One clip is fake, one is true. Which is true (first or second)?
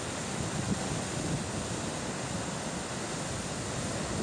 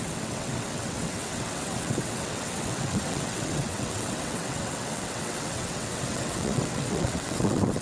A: first